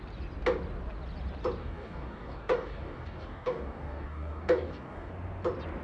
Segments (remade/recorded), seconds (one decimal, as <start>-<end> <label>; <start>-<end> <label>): 0.0-1.6 recorded; 1.6-5.1 remade; 5.1-5.8 recorded